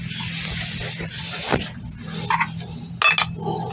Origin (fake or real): real